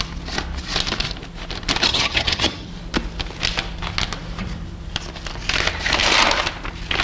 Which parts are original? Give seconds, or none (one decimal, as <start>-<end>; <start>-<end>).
0.0-1.9; 2.7-7.0